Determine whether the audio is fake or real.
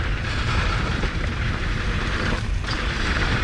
fake